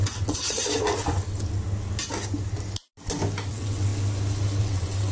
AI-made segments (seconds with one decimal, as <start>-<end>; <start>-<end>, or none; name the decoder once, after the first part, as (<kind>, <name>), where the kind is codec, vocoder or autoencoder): 0.0-0.6 (vocoder, WaveNeXt); 3.5-3.9; 4.6-5.1